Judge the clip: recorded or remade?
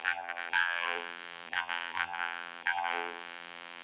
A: remade